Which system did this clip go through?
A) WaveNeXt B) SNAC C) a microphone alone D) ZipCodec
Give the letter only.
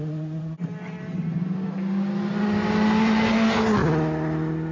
C